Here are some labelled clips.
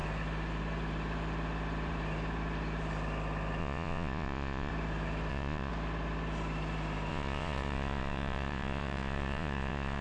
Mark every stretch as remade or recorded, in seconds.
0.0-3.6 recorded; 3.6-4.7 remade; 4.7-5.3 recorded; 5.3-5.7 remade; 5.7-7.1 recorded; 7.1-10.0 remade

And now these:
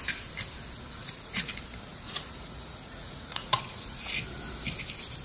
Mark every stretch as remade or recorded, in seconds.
0.0-1.0 recorded; 1.0-1.5 remade; 1.5-1.9 recorded; 1.9-4.1 remade; 4.1-5.2 recorded

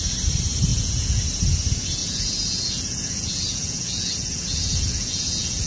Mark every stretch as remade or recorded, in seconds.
0.0-0.7 recorded; 0.7-1.2 remade; 1.2-2.0 recorded; 2.0-5.7 remade

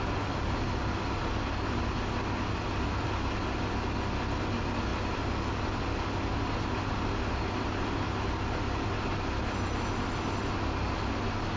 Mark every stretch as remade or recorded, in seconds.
0.0-11.6 recorded

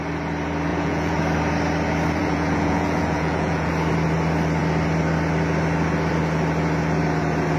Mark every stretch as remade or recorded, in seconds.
0.0-0.7 recorded; 0.7-1.2 remade; 1.2-2.2 recorded; 2.2-3.7 remade; 3.7-7.6 recorded